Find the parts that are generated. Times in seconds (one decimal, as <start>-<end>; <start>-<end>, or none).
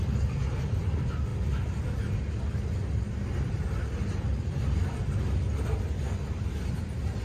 none